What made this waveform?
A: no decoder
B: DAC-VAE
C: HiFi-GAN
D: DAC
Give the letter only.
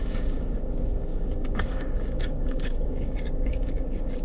D